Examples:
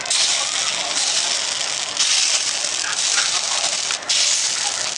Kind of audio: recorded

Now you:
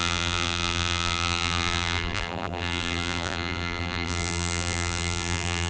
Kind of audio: remade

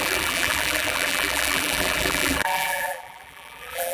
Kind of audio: remade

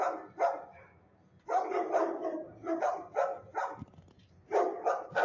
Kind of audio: recorded